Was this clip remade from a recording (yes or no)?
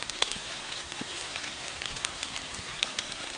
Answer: yes